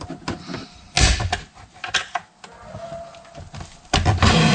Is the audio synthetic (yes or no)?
no